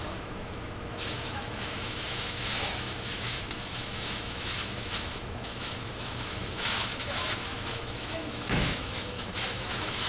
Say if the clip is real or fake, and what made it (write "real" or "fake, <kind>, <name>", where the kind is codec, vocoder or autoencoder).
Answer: fake, autoencoder, DAC-VAE